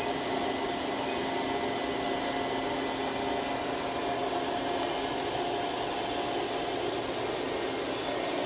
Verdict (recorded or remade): recorded